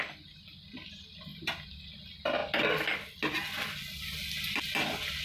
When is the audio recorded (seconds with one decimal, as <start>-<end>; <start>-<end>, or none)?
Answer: 1.3-1.8; 2.4-5.2